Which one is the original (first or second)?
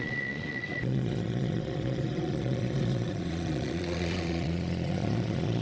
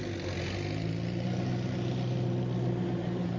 second